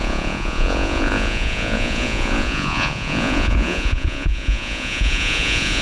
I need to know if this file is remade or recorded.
remade